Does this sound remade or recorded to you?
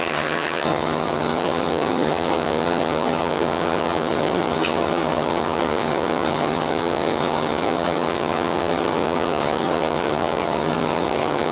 remade